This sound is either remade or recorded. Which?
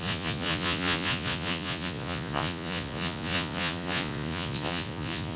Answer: remade